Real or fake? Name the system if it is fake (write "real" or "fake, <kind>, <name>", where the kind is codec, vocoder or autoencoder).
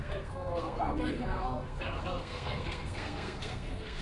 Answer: fake, codec, SNAC